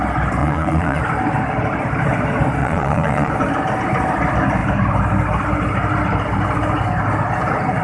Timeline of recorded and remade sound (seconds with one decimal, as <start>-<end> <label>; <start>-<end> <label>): 0.0-0.4 recorded; 0.4-1.0 remade; 1.0-2.6 recorded; 2.6-3.3 remade; 3.3-7.8 recorded